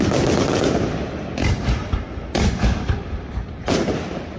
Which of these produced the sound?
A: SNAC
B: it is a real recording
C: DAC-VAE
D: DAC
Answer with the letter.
B